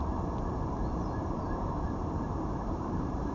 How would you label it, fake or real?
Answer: fake